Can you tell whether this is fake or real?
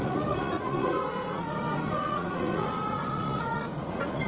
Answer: fake